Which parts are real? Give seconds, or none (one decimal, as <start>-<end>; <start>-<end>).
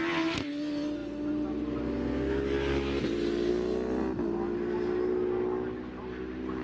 0.0-6.6